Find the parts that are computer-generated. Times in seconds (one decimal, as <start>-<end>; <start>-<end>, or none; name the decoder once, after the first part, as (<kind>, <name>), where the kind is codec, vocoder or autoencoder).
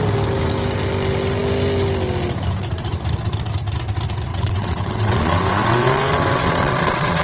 4.3-7.2 (vocoder, WaveNeXt)